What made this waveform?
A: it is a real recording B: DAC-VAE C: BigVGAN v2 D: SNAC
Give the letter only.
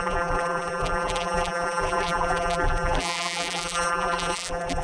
C